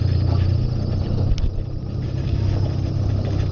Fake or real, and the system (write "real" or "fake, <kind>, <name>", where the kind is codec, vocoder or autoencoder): real